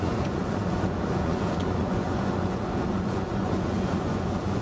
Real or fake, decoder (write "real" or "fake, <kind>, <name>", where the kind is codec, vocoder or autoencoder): fake, vocoder, Vocos